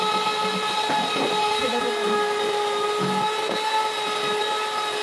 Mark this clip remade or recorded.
recorded